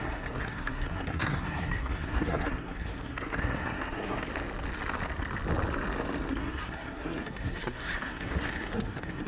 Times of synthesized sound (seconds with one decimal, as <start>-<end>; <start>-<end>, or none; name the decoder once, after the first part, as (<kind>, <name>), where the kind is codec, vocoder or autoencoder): 0.0-4.3 (codec, SNAC); 6.3-9.3